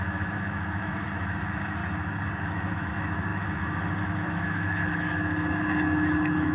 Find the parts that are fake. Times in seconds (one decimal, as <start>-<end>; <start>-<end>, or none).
0.0-1.8; 2.4-6.5